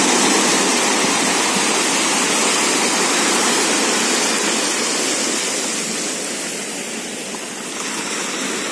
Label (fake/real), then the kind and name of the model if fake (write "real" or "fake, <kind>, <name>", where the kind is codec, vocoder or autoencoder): real